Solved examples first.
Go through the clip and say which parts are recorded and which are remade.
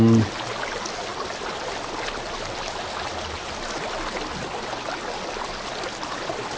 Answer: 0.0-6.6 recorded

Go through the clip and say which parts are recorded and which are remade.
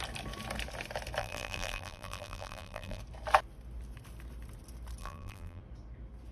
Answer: 0.0-1.2 recorded; 1.2-3.0 remade; 3.0-5.0 recorded; 5.0-5.6 remade; 5.6-6.3 recorded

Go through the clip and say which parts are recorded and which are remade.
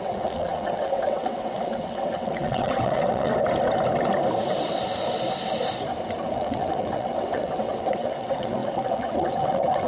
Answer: 0.0-3.3 remade; 3.3-6.3 recorded; 6.3-9.9 remade